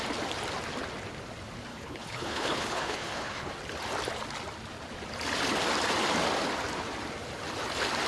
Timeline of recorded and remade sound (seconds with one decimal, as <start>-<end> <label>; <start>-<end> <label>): 0.0-1.7 recorded; 1.7-3.5 remade; 3.5-8.1 recorded